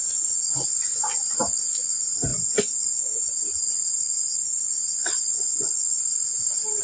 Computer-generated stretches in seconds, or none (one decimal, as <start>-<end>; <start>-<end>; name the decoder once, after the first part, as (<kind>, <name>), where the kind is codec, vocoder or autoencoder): 0.0-2.3 (vocoder, BigVGAN v2)